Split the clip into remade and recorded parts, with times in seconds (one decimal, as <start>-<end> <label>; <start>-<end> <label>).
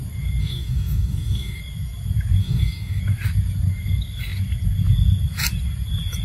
0.0-0.4 recorded; 0.4-1.6 remade; 1.6-2.4 recorded; 2.4-3.0 remade; 3.0-6.2 recorded